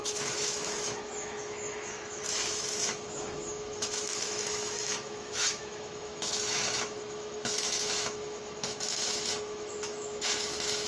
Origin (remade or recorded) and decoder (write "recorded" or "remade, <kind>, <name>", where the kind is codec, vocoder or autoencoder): remade, autoencoder, DAC-VAE